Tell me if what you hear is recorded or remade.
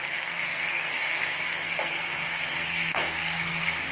remade